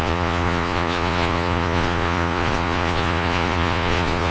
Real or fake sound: fake